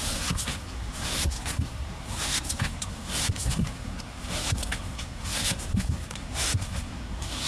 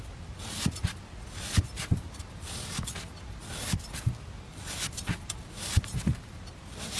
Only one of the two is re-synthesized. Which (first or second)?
first